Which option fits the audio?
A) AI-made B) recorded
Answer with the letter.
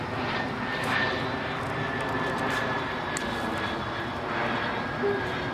B